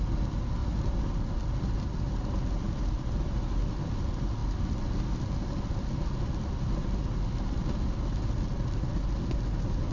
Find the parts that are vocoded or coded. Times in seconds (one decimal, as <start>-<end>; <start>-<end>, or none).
0.6-1.2